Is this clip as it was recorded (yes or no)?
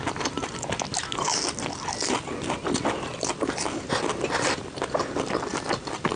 yes